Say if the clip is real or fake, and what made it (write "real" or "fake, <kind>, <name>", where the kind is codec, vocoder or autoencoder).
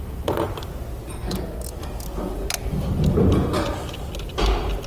real